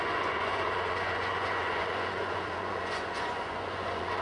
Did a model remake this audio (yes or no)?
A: yes